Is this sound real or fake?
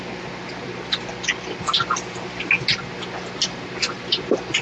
real